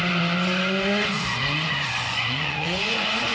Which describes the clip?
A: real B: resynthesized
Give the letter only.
B